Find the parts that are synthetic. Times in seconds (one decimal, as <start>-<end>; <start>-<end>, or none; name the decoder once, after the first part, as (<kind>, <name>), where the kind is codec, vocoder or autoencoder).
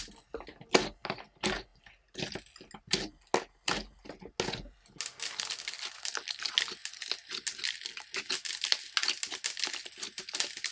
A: none